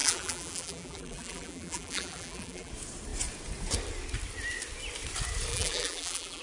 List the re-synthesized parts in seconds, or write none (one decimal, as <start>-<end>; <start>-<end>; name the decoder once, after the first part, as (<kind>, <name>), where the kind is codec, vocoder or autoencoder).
0.0-2.7 (vocoder, BigVGAN v2); 5.5-6.4